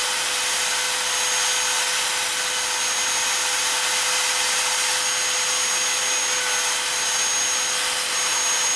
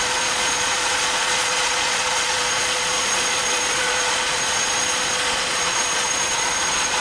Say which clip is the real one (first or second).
first